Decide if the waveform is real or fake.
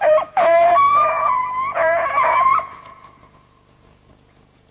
fake